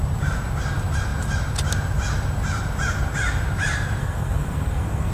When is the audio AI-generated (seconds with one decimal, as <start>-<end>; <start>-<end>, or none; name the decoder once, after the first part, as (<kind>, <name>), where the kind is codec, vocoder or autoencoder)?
4.0-5.1 (codec, SNAC)

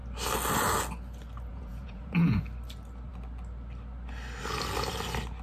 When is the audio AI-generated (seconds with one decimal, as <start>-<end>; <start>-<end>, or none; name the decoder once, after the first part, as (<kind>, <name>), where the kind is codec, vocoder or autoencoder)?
1.5-2.4 (vocoder, Vocos)